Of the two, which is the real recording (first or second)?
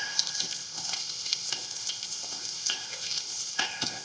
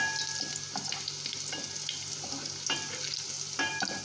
second